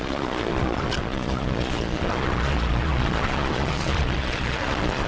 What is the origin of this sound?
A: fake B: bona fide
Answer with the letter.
A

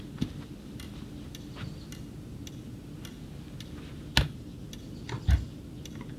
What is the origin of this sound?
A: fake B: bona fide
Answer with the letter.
B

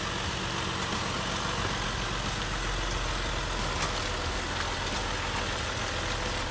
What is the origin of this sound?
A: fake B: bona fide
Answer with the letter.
B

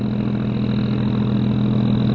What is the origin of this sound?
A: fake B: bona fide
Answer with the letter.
B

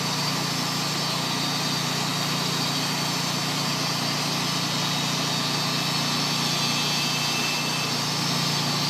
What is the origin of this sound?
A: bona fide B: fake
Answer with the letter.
A